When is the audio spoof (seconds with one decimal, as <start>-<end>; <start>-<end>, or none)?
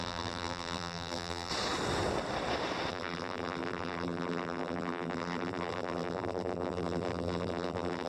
0.0-1.5; 2.9-8.1